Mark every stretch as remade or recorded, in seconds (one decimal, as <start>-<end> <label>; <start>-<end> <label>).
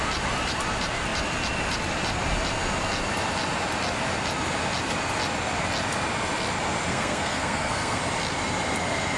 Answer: 0.0-6.9 recorded; 6.9-8.0 remade; 8.0-9.2 recorded